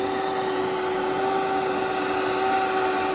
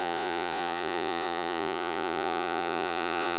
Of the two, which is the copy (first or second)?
second